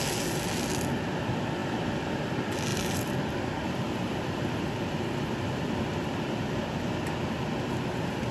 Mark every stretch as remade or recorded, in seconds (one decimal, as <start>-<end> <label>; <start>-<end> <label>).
0.0-1.6 recorded; 1.6-2.2 remade; 2.2-2.7 recorded; 2.7-6.9 remade; 6.9-8.3 recorded